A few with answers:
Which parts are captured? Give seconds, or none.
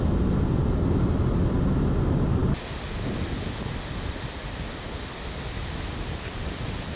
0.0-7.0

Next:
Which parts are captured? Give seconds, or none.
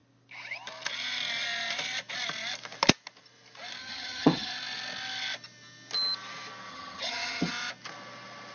0.0-3.8; 4.5-6.7; 7.5-8.5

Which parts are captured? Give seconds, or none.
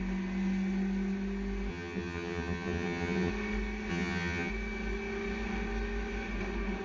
0.0-1.7; 3.3-3.9; 4.5-6.8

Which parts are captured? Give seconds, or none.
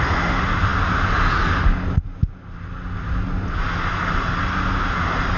0.0-5.4